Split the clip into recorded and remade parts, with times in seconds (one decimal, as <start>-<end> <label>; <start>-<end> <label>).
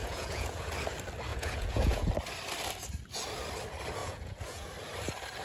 0.0-0.7 remade; 0.7-1.3 recorded; 1.3-2.1 remade; 2.1-4.0 recorded; 4.0-4.7 remade; 4.7-5.4 recorded